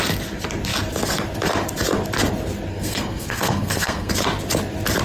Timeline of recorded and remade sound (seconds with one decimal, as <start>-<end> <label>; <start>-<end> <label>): 0.0-2.7 recorded; 2.7-4.1 remade; 4.1-5.0 recorded